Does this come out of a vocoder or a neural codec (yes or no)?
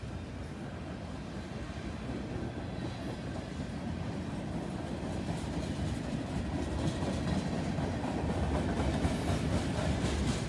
no